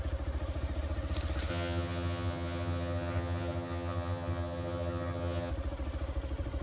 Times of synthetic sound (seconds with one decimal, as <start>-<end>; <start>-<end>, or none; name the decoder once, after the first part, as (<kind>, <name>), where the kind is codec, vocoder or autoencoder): 1.5-5.5 (vocoder, HiFi-GAN)